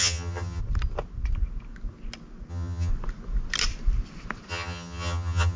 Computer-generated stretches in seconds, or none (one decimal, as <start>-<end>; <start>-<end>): 0.0-0.6; 2.5-2.9; 4.5-5.6